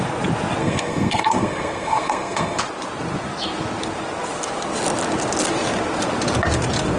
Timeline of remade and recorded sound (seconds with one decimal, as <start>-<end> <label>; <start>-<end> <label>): 0.0-0.6 recorded; 0.6-2.6 remade; 2.6-7.0 recorded